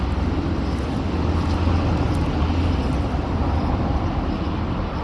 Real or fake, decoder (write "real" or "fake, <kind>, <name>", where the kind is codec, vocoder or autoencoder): real